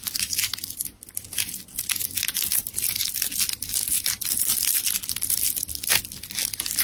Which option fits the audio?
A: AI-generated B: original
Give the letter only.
B